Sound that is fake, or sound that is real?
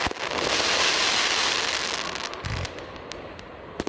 real